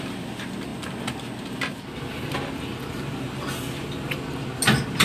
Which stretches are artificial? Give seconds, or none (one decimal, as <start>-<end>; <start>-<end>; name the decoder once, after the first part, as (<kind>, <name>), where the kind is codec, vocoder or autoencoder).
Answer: none